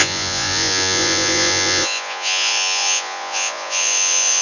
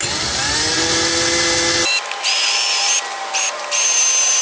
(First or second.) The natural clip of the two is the second